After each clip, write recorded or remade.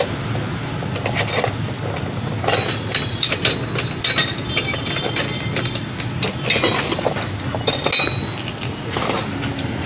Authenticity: recorded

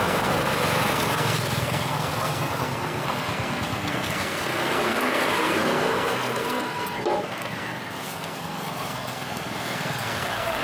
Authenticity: remade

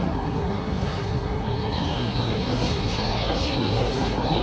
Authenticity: remade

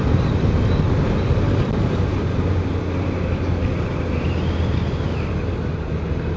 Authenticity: recorded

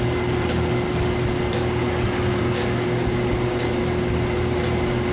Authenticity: recorded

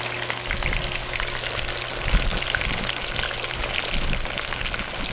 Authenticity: recorded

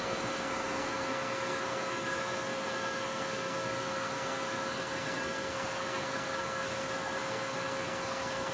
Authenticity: remade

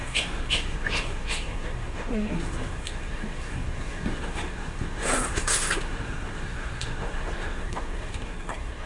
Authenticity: remade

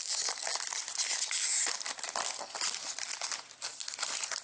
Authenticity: recorded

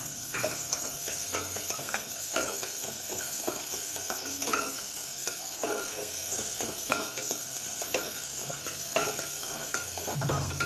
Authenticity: remade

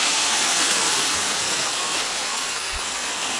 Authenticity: remade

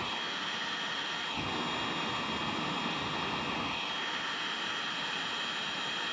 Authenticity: recorded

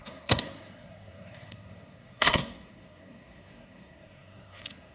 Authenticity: remade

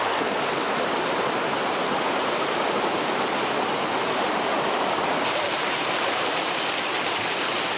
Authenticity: recorded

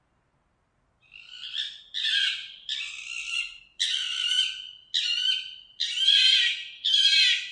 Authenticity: recorded